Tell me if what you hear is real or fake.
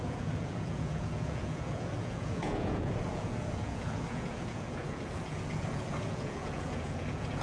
fake